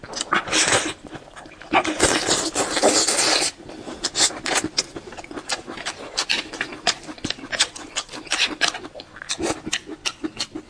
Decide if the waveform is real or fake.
real